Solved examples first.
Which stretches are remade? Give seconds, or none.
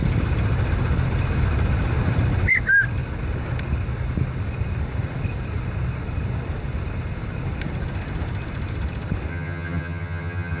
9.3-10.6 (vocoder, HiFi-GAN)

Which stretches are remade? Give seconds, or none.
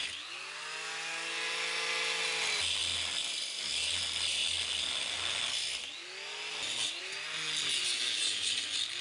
none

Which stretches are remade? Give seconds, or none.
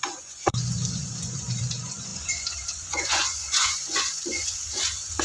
0.0-5.2 (vocoder, Vocos)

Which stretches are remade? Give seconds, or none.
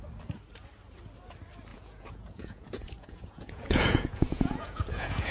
1.7-5.3 (vocoder, Vocos)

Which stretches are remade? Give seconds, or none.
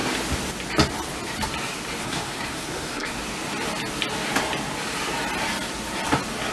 2.0-3.2 (codec, SNAC)